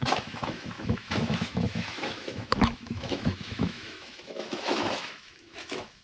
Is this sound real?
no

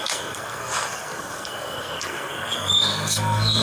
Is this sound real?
no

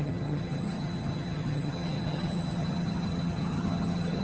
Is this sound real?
no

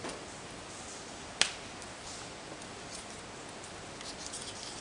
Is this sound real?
yes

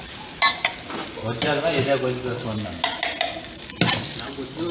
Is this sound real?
yes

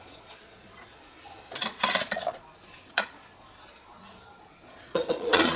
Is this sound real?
no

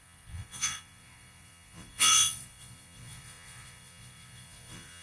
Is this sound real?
no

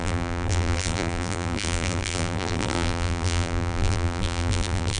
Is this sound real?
no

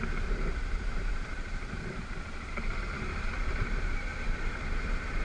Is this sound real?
no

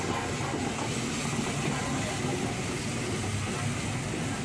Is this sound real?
yes